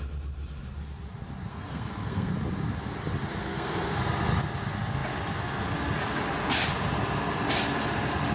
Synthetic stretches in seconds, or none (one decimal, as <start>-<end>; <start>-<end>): 1.5-2.3; 3.4-4.0